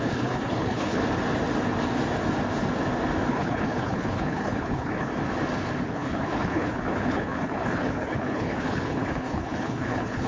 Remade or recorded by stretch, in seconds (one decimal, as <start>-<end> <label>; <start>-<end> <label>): 0.0-1.0 remade; 1.0-3.3 recorded; 3.3-5.1 remade; 5.1-5.9 recorded; 5.9-10.3 remade